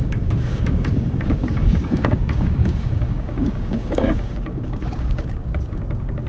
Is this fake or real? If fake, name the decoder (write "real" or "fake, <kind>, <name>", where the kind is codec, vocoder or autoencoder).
fake, codec, DAC